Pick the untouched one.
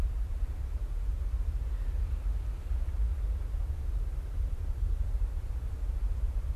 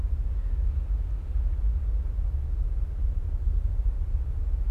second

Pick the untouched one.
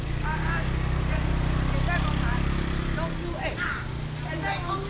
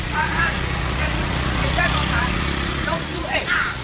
first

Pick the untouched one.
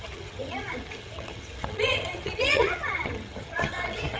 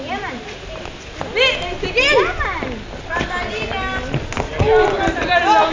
second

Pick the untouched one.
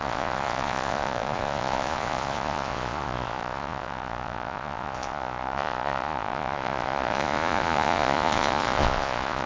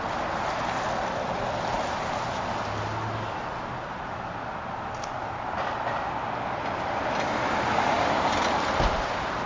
second